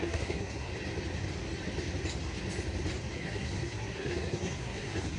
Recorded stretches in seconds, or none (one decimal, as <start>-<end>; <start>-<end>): 0.7-3.1